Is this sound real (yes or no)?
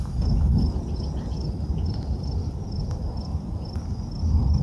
yes